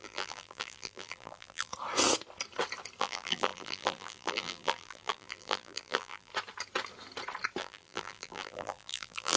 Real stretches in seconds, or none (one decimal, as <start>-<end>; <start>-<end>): 1.7-3.0; 6.3-7.6